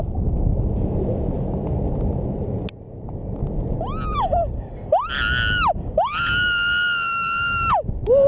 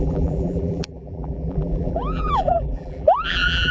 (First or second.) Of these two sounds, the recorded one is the first